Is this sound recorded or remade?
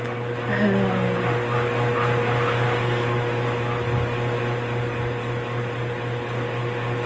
recorded